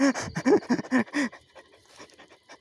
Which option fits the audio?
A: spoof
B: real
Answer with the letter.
B